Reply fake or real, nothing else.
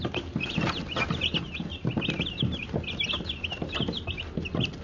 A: real